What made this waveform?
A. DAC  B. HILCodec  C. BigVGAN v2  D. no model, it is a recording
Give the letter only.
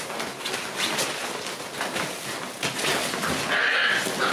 D